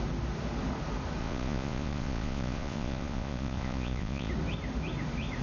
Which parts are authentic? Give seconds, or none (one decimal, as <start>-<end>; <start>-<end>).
0.0-1.2; 4.3-5.4